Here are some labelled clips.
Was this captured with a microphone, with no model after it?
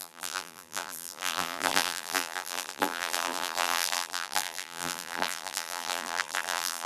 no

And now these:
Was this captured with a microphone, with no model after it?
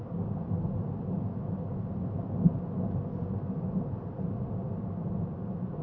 yes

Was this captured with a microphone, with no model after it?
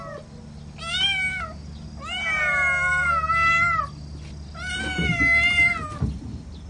yes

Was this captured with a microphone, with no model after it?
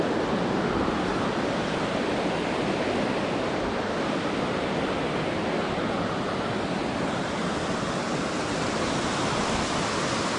yes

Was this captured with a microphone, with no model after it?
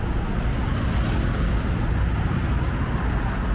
yes